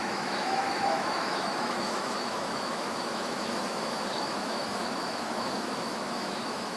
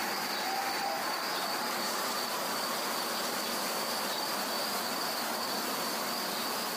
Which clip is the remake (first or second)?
first